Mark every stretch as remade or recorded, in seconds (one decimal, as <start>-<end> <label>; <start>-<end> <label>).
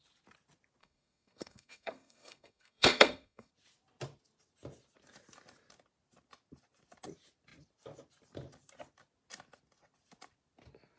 0.0-0.8 recorded; 0.8-3.5 remade; 3.5-11.0 recorded